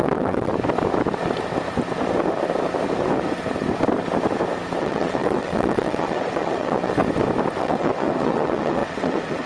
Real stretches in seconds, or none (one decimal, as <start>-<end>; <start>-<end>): 0.5-4.8; 7.0-7.6